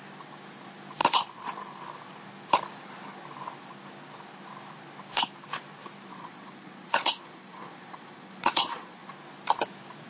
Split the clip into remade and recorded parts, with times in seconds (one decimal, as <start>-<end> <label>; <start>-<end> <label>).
0.0-6.1 recorded; 6.1-9.1 remade; 9.1-10.1 recorded